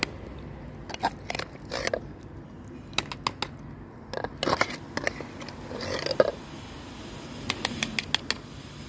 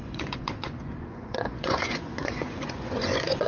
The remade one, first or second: second